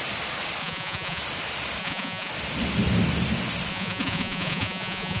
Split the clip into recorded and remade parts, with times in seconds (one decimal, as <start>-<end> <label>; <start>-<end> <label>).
0.0-0.6 recorded; 0.6-1.2 remade; 1.2-1.8 recorded; 1.8-2.3 remade; 2.3-3.7 recorded; 3.7-5.2 remade